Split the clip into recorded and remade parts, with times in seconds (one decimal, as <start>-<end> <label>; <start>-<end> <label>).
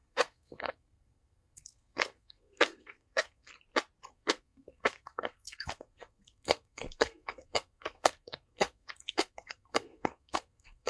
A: 0.0-3.5 remade; 3.5-4.1 recorded; 4.1-10.9 remade